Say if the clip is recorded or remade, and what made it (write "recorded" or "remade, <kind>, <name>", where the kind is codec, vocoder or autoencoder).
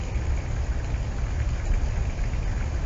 recorded